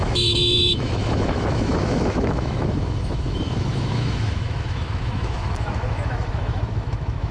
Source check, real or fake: fake